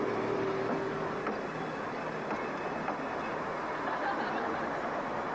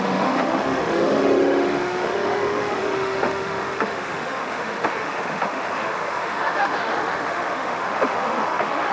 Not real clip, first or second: second